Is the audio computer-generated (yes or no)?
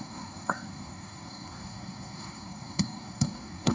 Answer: yes